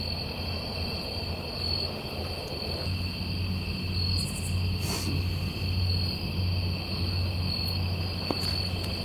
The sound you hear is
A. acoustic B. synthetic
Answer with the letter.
A